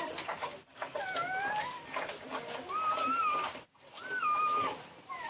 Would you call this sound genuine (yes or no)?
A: yes